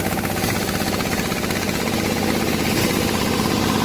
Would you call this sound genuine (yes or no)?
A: yes